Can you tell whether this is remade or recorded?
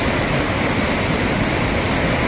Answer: recorded